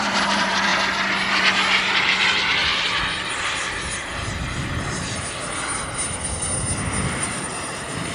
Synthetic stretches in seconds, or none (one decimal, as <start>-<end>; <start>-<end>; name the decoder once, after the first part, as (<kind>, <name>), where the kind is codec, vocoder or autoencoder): 0.0-0.7 (vocoder, BigVGAN v2); 1.8-2.6; 7.1-8.1